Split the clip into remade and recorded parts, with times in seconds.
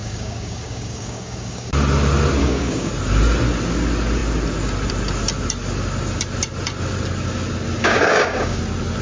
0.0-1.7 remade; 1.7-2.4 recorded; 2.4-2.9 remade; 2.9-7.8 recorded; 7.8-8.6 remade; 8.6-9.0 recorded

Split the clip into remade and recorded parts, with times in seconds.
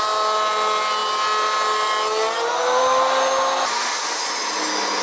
0.0-5.0 recorded